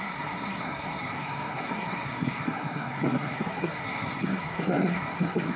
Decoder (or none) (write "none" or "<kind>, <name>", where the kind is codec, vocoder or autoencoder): codec, SNAC